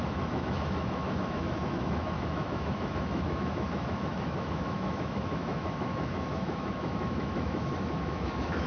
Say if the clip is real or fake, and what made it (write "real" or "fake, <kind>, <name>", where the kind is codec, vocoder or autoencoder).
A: fake, autoencoder, DAC-VAE